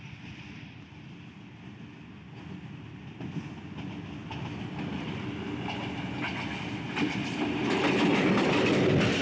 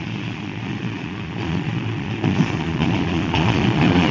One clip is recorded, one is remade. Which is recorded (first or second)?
first